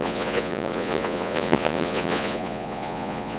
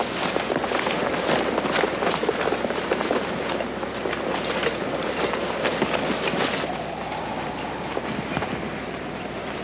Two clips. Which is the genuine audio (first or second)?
second